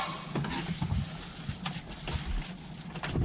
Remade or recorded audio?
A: recorded